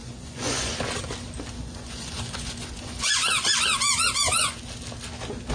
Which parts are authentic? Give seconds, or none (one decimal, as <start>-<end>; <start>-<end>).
0.7-1.6; 4.6-5.5